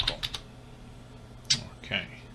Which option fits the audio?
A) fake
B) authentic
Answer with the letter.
A